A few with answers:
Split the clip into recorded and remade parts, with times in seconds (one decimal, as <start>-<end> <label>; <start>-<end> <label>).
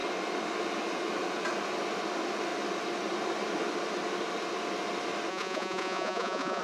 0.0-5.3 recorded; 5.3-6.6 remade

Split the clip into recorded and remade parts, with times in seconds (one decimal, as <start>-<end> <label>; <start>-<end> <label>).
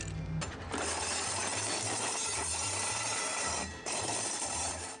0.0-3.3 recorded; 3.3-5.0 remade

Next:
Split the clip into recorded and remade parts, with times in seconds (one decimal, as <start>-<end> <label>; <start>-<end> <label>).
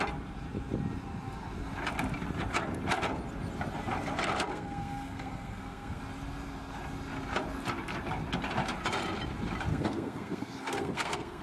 0.0-4.5 recorded; 4.5-6.0 remade; 6.0-9.7 recorded; 9.7-11.4 remade